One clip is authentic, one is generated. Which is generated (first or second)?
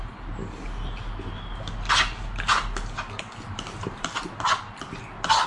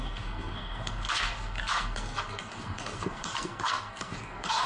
second